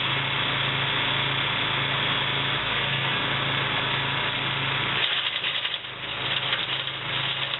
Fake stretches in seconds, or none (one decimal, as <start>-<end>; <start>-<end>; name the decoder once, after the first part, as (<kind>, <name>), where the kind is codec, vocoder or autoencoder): 2.6-3.2 (codec, SNAC)